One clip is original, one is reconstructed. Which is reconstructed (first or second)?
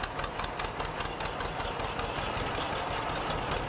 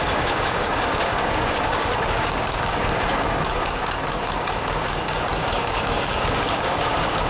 second